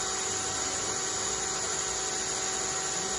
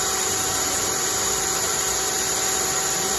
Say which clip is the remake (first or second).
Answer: second